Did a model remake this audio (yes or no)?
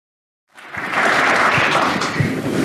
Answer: yes